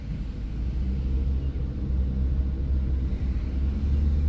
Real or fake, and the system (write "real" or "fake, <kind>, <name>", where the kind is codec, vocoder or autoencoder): real